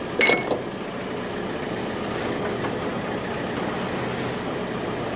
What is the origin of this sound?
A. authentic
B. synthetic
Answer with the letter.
A